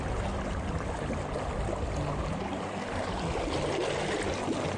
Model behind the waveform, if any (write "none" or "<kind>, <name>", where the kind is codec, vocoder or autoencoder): none